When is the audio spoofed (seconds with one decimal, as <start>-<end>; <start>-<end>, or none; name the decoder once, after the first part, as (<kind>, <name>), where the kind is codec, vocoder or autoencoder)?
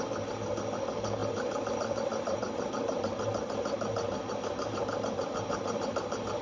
0.0-6.4 (vocoder, BigVGAN v2)